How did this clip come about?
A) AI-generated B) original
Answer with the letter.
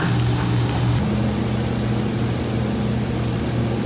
B